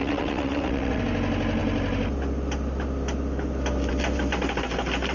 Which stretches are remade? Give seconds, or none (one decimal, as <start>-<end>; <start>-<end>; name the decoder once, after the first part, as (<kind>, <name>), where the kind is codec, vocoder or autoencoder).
0.0-1.0 (vocoder, WaveNeXt)

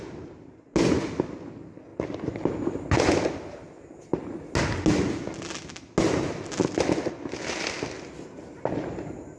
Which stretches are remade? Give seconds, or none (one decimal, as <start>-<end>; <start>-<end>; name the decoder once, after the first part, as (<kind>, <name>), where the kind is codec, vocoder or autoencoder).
none

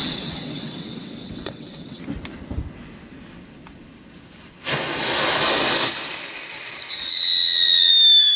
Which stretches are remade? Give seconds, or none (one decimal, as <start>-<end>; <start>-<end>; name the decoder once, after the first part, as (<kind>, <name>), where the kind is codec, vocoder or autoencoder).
0.0-2.0 (vocoder, WaveNeXt); 6.9-7.9

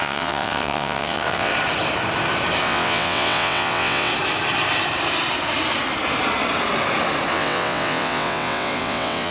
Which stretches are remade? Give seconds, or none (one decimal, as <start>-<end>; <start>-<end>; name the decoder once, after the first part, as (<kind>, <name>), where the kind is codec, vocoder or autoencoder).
0.0-1.5 (vocoder, WaveNeXt); 2.6-4.1; 7.3-9.3